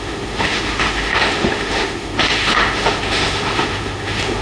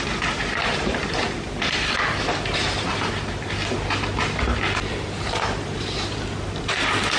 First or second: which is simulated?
first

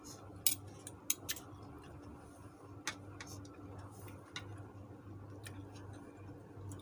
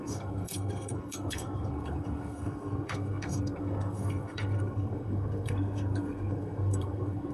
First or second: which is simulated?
second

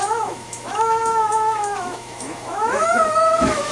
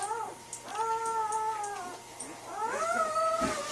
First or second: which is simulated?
first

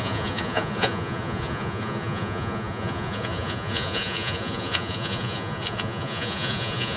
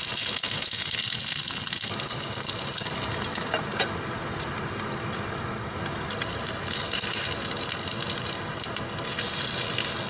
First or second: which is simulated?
first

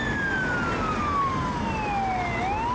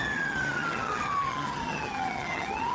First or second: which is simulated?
second